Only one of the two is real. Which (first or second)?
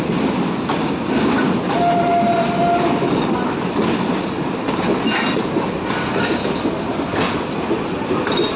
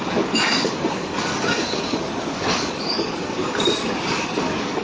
first